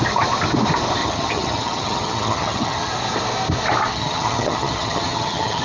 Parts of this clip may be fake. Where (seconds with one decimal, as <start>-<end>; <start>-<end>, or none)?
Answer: 1.0-2.9; 3.9-5.6